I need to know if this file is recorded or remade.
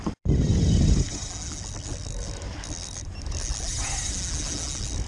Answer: recorded